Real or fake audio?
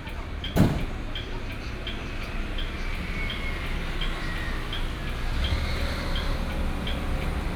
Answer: real